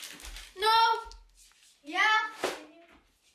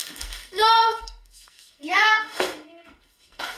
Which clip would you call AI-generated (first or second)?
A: second